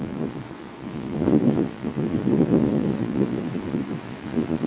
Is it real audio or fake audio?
fake